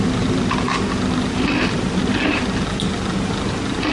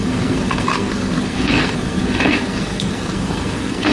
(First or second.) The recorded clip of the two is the first